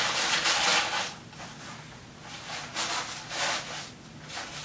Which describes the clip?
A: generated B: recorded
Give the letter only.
B